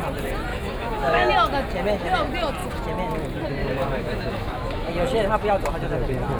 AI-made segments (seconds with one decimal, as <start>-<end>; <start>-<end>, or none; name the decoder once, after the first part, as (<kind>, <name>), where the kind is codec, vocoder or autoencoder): 0.5-1.3 (autoencoder, DAC-VAE); 3.6-4.9